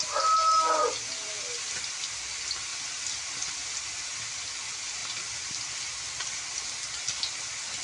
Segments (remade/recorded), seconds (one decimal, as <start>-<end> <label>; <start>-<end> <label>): 0.0-7.8 recorded